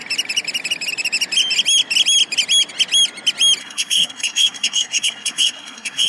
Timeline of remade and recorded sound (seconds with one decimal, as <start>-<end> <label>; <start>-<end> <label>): 0.0-3.6 recorded; 3.6-6.1 remade